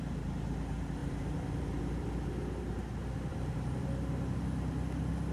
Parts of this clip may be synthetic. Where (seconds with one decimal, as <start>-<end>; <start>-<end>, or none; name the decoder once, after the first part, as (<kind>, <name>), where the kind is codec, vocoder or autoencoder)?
1.0-1.8 (vocoder, BigVGAN v2); 3.3-3.8

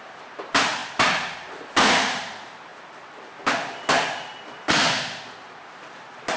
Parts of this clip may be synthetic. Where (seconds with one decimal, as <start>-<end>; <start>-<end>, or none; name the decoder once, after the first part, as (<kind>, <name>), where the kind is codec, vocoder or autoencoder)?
0.0-0.8 (vocoder, BigVGAN v2); 1.5-2.7; 5.7-6.4

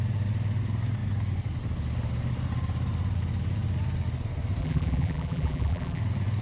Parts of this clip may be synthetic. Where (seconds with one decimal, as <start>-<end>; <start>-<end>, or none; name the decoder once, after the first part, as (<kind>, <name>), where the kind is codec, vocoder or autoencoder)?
4.6-6.0 (vocoder, BigVGAN v2)

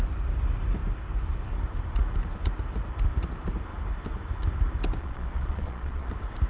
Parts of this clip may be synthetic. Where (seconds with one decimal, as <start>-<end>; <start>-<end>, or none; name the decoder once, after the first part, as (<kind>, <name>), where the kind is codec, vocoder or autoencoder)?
5.0-6.1 (vocoder, Vocos)

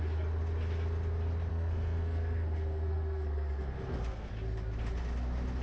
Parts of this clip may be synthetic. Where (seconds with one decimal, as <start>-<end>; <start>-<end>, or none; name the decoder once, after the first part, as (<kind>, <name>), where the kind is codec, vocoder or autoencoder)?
1.5-4.3 (codec, SNAC)